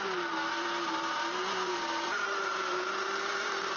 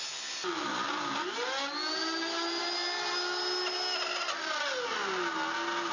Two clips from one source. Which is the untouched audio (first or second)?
second